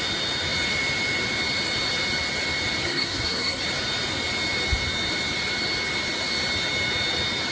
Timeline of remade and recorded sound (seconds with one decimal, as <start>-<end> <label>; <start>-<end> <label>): 0.0-2.8 recorded; 2.8-3.6 remade; 3.6-7.5 recorded